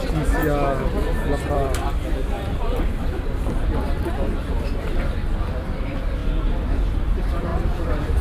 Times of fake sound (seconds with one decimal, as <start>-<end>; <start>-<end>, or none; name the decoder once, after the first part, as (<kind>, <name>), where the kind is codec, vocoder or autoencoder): 0.0-0.4 (vocoder, BigVGAN v2); 1.5-6.2; 6.8-7.5